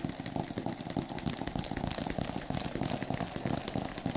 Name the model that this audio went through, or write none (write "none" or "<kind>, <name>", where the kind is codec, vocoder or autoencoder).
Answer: none